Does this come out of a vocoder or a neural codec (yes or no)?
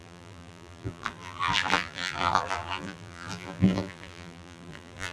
yes